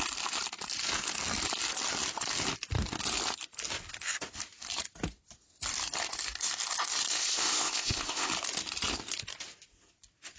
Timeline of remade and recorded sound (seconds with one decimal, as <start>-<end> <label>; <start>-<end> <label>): 0.0-7.1 recorded; 7.1-8.3 remade; 8.3-10.4 recorded